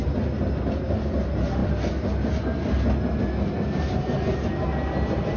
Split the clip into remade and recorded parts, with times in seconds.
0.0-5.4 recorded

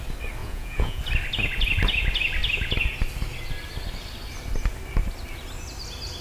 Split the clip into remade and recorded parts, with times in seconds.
0.0-0.4 recorded; 0.4-1.0 remade; 1.0-6.2 recorded

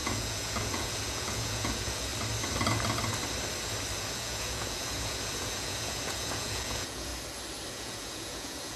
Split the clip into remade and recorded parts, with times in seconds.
0.0-2.1 remade; 2.1-4.0 recorded; 4.0-7.1 remade; 7.1-7.7 recorded; 7.7-8.8 remade

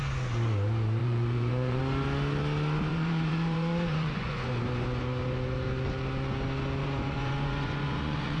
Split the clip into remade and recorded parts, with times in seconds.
0.0-1.0 recorded; 1.0-1.8 remade; 1.8-2.9 recorded; 2.9-4.5 remade; 4.5-6.8 recorded; 6.8-8.4 remade